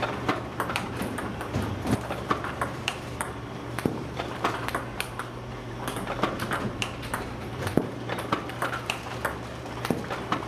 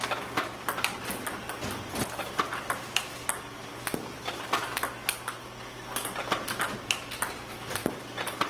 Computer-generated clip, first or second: first